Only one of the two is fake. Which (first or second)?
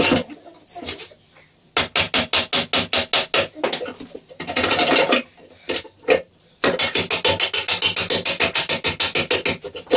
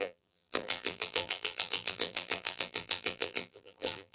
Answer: second